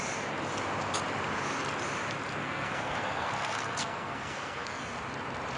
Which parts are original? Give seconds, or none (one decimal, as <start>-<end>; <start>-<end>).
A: 0.0-2.4; 4.8-5.6